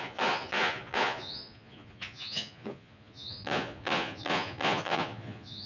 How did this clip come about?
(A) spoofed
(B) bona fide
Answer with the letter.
A